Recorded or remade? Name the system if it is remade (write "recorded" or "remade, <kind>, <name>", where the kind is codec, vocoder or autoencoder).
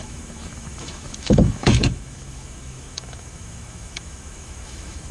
remade, autoencoder, DAC-VAE